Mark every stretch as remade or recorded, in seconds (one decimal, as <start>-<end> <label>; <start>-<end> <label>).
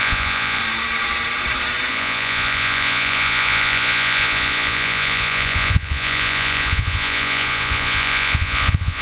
0.0-0.6 remade; 0.6-1.9 recorded; 1.9-9.0 remade